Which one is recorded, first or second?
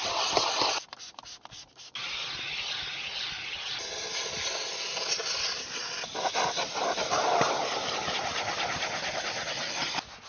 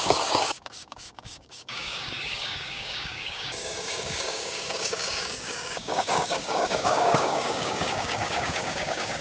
first